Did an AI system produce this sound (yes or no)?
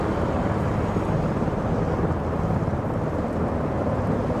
no